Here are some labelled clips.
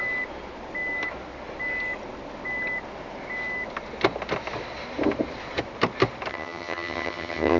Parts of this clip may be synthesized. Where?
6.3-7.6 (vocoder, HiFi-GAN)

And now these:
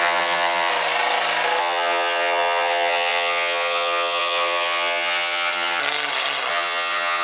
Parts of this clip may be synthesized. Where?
0.0-0.7 (vocoder, HiFi-GAN); 1.6-5.8; 6.5-7.2

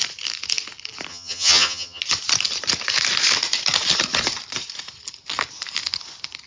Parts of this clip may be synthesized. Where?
1.1-2.0 (vocoder, HiFi-GAN)